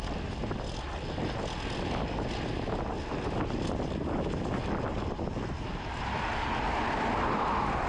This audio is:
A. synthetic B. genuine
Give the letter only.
B